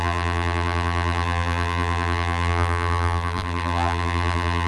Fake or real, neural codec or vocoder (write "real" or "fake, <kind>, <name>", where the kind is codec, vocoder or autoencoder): fake, vocoder, BigVGAN v2